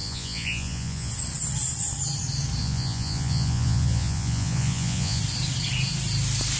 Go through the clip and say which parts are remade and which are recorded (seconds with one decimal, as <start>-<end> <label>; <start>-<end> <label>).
0.0-1.1 remade; 1.1-2.6 recorded; 2.6-5.2 remade; 5.2-6.6 recorded